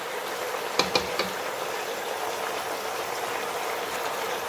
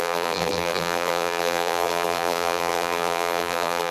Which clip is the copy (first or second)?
second